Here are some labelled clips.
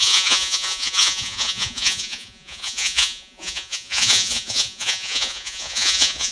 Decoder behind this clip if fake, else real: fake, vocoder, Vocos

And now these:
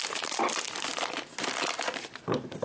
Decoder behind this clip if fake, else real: fake, vocoder, BigVGAN v2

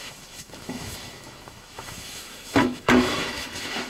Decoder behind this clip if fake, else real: fake, autoencoder, DAC-VAE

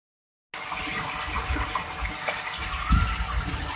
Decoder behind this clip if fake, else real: real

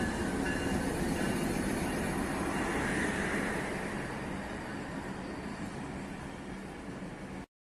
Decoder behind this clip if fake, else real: real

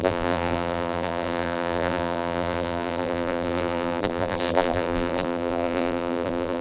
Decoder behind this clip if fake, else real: fake, vocoder, BigVGAN v2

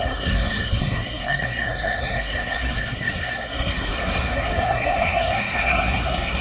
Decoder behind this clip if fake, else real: fake, codec, SNAC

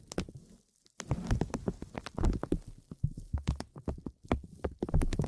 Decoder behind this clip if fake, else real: real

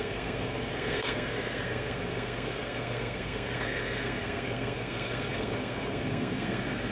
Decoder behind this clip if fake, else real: fake, codec, SNAC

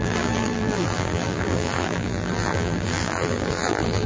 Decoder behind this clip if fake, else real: fake, vocoder, BigVGAN v2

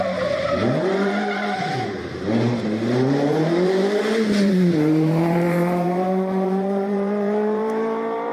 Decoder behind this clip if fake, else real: fake, vocoder, BigVGAN v2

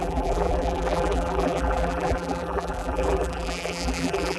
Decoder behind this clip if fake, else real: fake, vocoder, BigVGAN v2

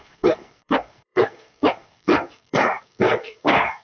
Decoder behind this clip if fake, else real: fake, codec, SNAC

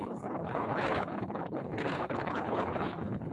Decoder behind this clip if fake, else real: fake, codec, HILCodec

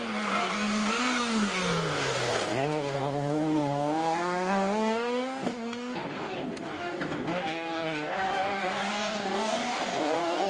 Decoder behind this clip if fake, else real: fake, codec, DAC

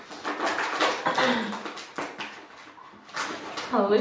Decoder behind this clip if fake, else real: real